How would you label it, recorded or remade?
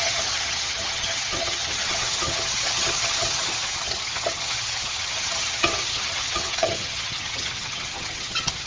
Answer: remade